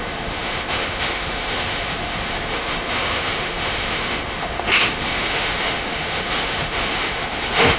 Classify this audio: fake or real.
fake